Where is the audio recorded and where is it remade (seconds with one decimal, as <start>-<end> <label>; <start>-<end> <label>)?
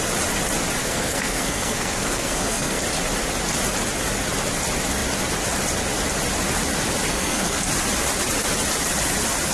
0.0-0.8 recorded; 0.8-2.8 remade; 2.8-7.1 recorded; 7.1-7.7 remade; 7.7-9.5 recorded